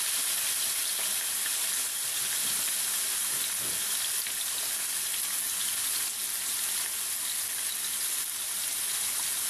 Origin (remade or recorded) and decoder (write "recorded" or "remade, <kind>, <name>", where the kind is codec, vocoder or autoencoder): recorded